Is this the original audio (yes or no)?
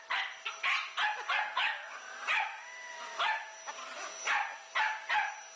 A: yes